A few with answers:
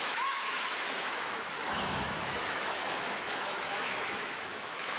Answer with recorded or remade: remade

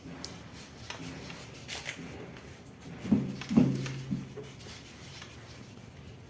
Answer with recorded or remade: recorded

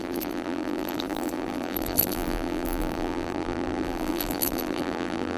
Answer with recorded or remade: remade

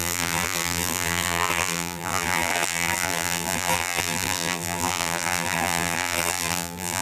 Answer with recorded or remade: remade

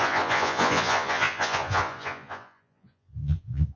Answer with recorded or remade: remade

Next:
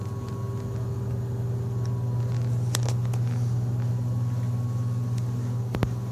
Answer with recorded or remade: recorded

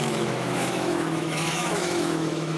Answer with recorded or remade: remade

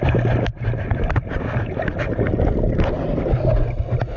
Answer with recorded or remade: recorded